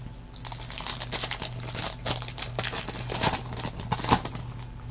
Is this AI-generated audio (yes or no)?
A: no